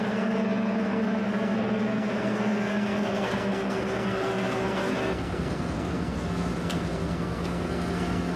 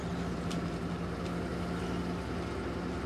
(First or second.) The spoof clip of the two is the first